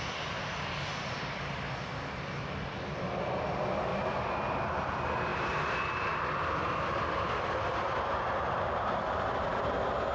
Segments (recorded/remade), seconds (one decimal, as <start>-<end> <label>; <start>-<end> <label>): 0.0-5.3 recorded; 5.3-10.1 remade